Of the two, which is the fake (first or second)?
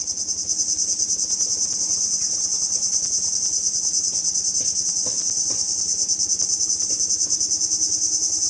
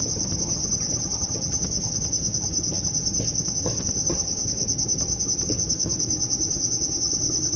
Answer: second